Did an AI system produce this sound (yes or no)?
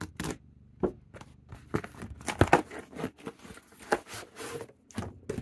no